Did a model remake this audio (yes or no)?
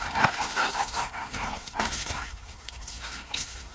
yes